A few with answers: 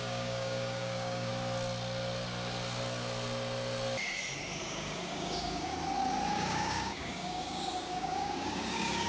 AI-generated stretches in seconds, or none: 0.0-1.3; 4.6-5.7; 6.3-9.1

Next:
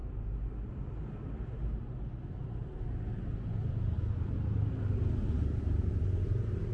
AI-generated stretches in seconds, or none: none